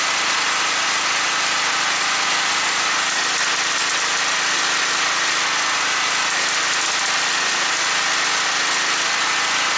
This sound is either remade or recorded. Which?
recorded